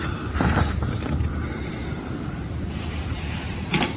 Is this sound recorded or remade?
remade